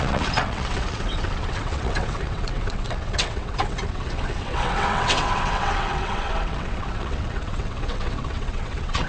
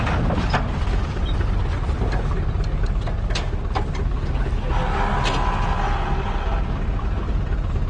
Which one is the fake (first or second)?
first